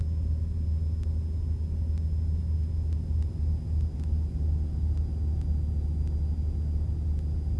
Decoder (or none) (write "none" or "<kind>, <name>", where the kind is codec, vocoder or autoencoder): none